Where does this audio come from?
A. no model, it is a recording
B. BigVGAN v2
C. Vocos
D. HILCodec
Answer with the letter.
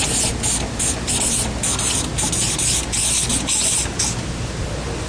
A